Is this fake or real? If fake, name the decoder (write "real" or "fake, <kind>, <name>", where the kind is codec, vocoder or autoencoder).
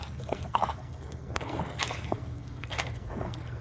fake, codec, SNAC